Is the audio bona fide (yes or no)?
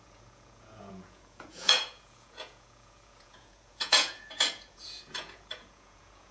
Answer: no